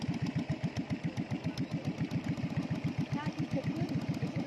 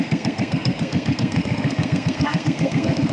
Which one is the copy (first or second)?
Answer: second